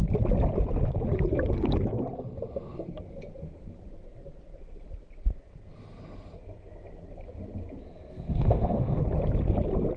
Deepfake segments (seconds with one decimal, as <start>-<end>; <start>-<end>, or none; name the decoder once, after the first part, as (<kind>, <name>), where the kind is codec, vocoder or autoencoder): 7.8-9.0 (codec, SNAC)